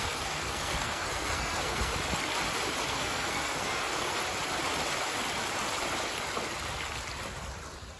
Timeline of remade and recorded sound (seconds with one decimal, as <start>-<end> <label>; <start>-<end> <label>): 0.0-1.9 remade; 1.9-2.9 recorded; 2.9-4.2 remade; 4.2-8.0 recorded